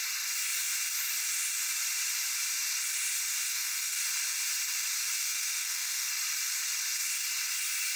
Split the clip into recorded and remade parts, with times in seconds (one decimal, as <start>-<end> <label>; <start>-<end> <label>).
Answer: 0.0-3.5 recorded; 3.5-4.0 remade; 4.0-5.2 recorded; 5.2-6.1 remade; 6.1-8.0 recorded